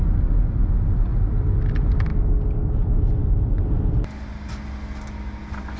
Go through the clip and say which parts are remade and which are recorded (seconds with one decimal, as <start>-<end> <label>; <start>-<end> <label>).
0.0-5.8 recorded